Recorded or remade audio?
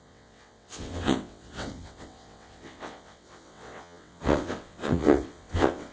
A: remade